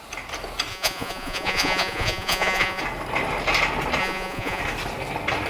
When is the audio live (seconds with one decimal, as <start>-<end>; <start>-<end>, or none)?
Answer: 0.0-0.7; 2.8-4.0; 4.6-5.5